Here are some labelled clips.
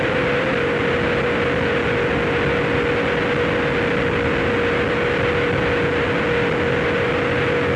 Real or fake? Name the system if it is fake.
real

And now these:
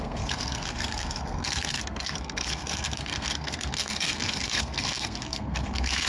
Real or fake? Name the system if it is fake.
fake, codec, SNAC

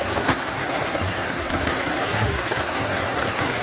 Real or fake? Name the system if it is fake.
fake, codec, SNAC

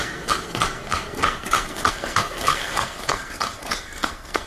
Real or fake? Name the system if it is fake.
fake, codec, SNAC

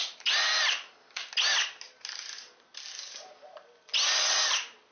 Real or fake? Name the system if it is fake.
real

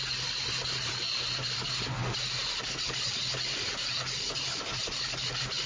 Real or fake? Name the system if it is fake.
real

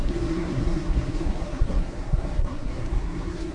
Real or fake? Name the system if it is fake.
fake, codec, SNAC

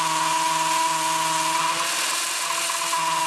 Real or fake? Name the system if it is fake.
real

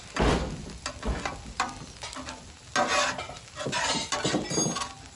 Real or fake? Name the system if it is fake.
real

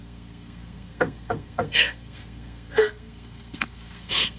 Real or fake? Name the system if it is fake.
fake, codec, SNAC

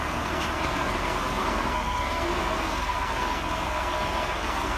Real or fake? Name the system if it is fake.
fake, codec, SNAC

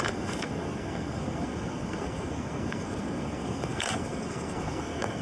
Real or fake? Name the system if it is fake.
fake, codec, SNAC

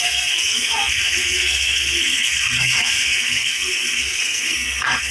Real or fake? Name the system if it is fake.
fake, codec, SNAC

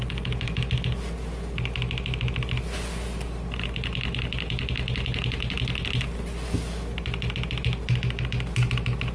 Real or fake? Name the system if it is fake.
real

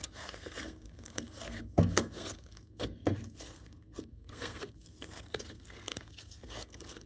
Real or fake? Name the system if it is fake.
fake, codec, SNAC